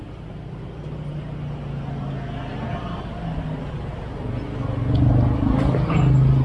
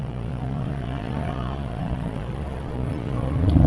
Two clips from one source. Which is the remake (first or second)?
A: second